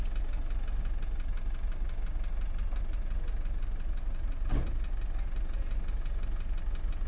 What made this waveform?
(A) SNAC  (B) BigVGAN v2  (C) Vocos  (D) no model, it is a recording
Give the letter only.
D